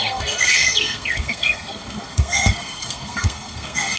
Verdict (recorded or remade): remade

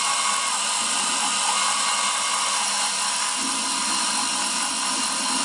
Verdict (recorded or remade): recorded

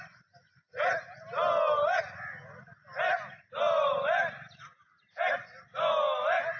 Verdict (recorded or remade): recorded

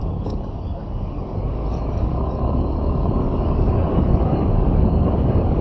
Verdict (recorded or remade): remade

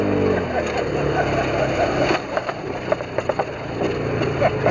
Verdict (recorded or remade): recorded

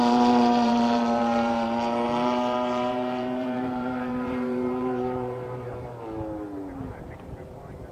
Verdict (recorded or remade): remade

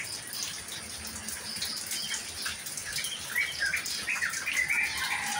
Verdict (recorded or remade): recorded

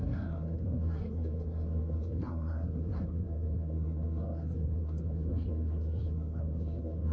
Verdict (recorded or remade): remade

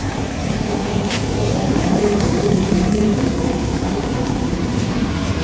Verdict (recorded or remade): remade